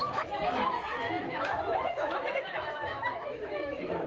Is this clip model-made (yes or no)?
yes